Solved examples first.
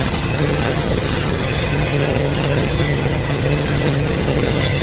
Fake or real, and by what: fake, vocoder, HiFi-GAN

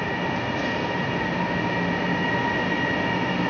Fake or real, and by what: real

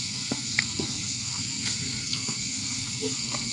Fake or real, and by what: fake, codec, SNAC